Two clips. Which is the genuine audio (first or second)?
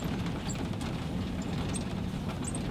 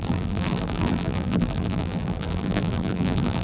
first